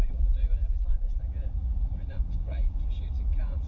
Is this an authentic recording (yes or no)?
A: no